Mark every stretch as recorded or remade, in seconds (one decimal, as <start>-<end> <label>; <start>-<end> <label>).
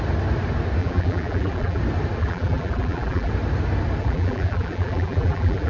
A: 0.0-0.8 recorded; 0.8-1.8 remade; 1.8-2.2 recorded; 2.2-3.3 remade; 3.3-4.0 recorded; 4.0-5.7 remade